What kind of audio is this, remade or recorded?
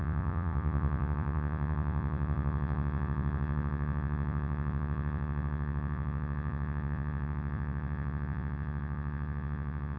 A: remade